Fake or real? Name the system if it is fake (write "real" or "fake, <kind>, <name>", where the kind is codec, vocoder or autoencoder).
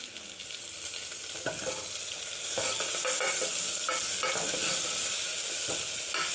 real